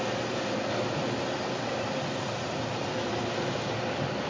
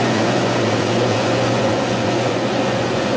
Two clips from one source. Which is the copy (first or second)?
second